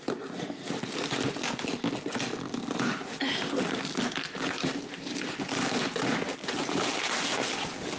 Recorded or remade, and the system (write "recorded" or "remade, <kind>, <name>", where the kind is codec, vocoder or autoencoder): recorded